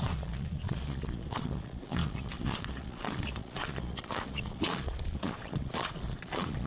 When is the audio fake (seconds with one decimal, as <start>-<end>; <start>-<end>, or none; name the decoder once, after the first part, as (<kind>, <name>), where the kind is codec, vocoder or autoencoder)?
0.0-6.7 (vocoder, Vocos)